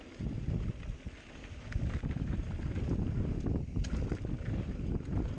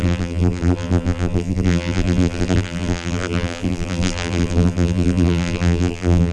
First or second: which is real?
first